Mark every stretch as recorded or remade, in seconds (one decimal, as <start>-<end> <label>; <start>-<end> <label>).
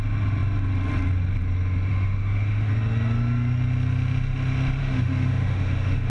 0.0-1.9 recorded; 1.9-2.7 remade; 2.7-4.8 recorded; 4.8-6.1 remade